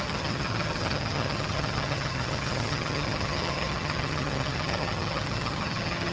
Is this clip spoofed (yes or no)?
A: yes